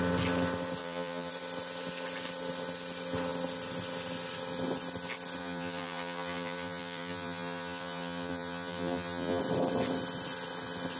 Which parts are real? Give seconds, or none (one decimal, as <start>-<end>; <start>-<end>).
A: 0.0-0.8; 1.3-5.4; 9.4-11.0